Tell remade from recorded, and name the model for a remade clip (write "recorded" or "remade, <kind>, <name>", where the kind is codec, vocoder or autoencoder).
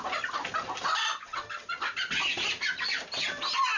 recorded